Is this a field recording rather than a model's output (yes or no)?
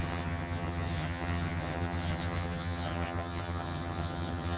no